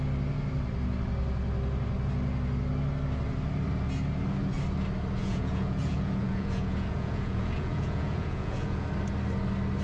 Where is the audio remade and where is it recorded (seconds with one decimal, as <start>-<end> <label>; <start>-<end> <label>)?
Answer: 0.0-5.2 recorded; 5.2-8.9 remade; 8.9-9.8 recorded